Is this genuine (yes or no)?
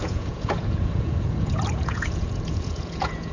no